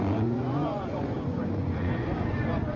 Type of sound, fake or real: fake